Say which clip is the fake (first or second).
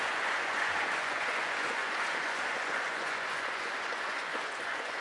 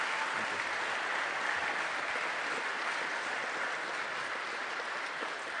first